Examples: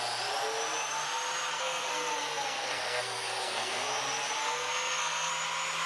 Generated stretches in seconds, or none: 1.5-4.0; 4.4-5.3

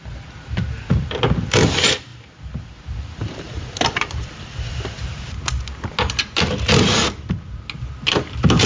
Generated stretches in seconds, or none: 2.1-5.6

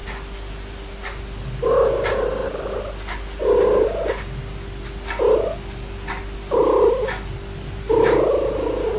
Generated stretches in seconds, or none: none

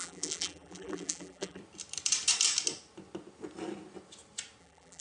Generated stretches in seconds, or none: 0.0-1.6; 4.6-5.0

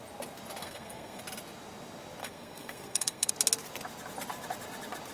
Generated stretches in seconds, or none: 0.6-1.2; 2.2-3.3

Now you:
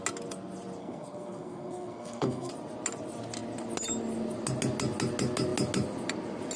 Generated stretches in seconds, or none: 0.8-2.5

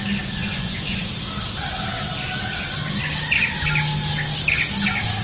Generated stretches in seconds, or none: 0.4-1.1